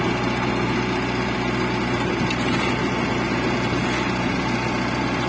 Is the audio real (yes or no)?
yes